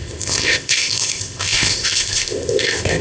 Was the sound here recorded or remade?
remade